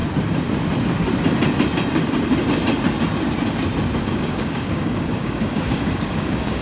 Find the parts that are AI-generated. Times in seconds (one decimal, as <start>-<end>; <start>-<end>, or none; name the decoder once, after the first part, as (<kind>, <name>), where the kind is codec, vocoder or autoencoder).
4.0-6.6 (codec, DAC)